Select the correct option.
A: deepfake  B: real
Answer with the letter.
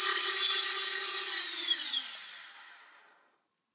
B